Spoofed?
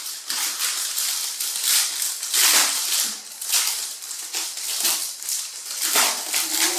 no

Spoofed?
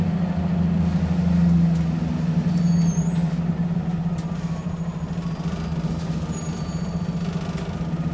no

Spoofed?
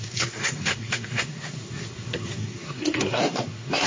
yes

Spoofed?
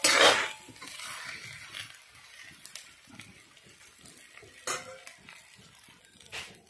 no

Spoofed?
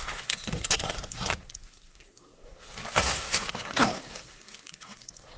yes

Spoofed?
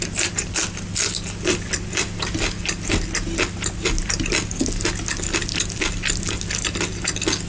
no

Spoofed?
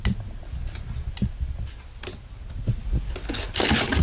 no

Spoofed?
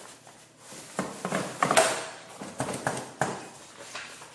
no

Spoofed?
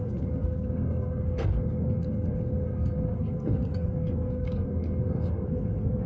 yes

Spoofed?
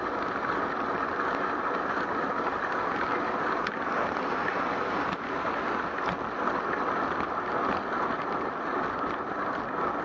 no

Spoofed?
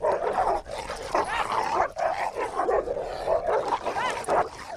no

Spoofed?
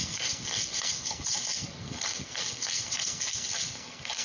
yes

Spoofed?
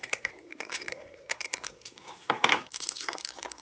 yes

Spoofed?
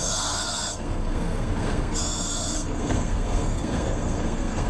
yes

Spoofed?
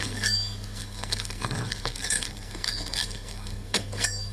yes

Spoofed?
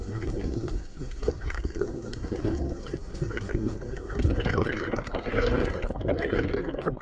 yes